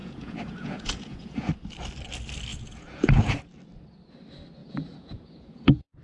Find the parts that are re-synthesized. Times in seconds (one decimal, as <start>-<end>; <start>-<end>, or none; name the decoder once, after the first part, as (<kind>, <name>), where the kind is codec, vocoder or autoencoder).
0.0-1.5 (vocoder, Vocos); 2.5-3.4; 4.6-6.0